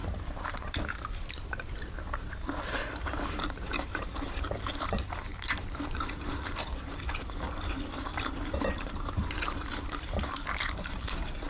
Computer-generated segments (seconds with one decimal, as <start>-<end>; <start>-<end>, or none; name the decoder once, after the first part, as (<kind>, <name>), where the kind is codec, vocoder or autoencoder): 0.0-11.5 (vocoder, BigVGAN v2)

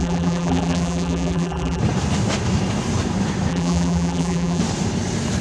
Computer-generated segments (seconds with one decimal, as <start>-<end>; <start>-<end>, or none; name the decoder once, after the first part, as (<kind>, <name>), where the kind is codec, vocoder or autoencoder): 0.0-1.8 (vocoder, BigVGAN v2); 3.5-4.6